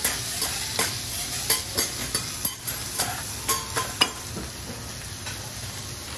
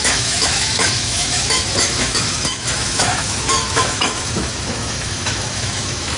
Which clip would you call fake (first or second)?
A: second